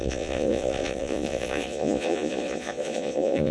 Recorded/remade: remade